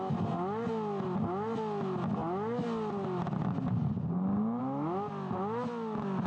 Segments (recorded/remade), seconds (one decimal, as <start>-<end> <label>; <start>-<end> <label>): 0.0-6.3 recorded